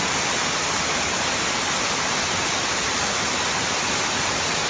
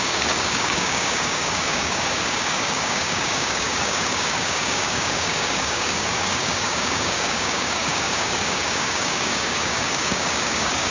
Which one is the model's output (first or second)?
second